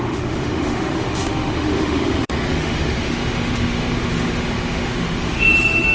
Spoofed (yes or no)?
yes